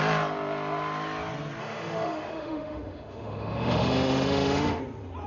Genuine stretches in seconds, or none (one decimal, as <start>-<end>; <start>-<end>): 0.0-1.6; 4.8-5.3